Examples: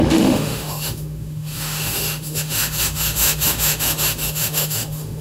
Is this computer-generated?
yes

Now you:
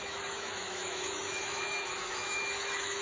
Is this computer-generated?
yes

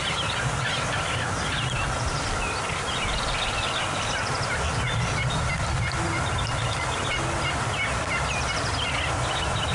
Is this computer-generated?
no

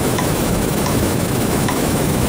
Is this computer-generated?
yes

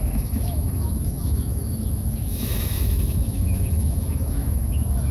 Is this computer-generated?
yes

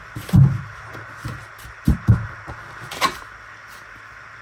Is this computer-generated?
no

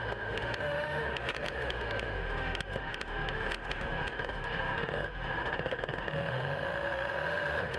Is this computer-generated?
yes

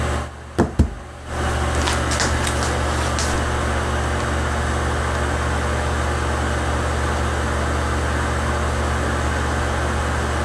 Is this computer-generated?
no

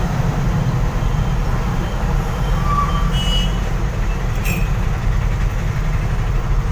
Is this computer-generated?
no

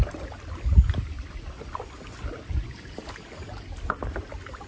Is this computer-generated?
no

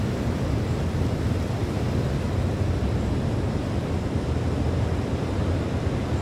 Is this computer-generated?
no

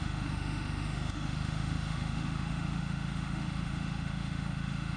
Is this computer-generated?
yes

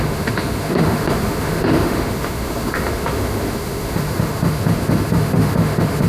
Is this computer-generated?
yes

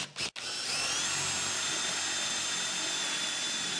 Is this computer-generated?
no